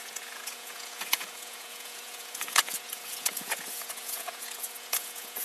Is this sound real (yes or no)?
no